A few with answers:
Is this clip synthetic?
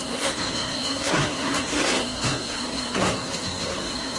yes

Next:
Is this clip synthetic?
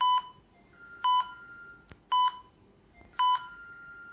no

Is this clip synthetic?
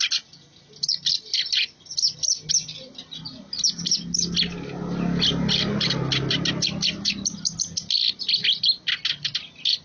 no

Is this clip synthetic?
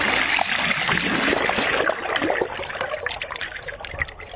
no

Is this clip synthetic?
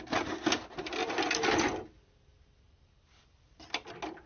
no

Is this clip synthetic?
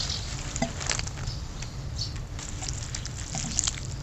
no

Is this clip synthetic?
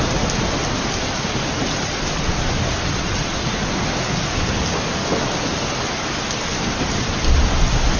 no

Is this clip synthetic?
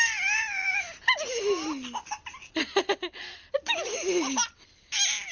no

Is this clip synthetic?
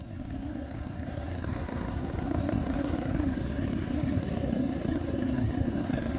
yes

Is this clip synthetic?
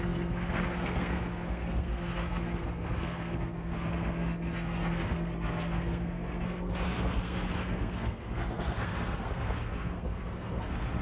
yes